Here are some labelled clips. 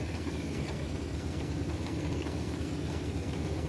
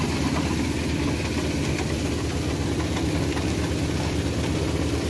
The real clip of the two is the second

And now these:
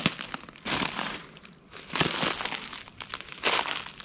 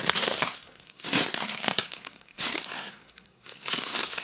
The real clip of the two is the first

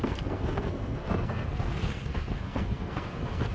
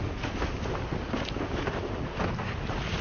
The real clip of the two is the second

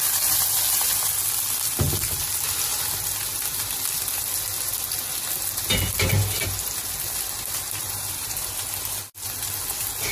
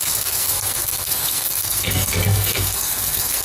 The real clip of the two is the first